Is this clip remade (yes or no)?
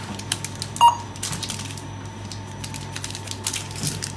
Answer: no